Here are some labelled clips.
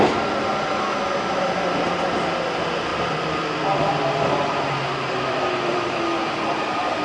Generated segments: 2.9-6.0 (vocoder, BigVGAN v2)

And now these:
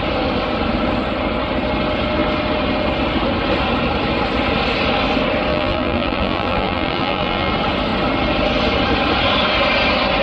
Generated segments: 5.5-7.5 (vocoder, BigVGAN v2)

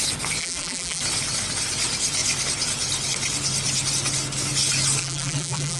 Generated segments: 0.4-1.0 (vocoder, BigVGAN v2); 5.0-5.8

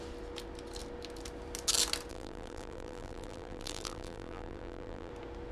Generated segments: 2.1-5.1 (vocoder, BigVGAN v2)

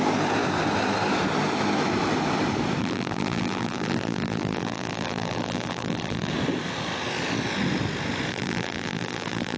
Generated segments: 2.8-6.3 (vocoder, BigVGAN v2); 8.3-9.6

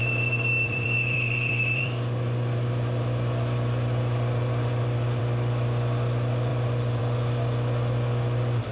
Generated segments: 0.0-5.2 (vocoder, BigVGAN v2); 6.5-7.0

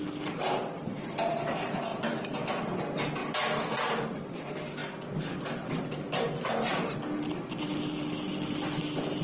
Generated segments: 0.4-1.4 (vocoder, BigVGAN v2); 1.9-2.8

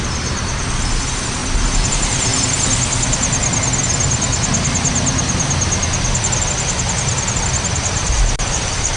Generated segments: 0.0-1.4 (vocoder, BigVGAN v2); 1.9-2.3; 7.3-9.0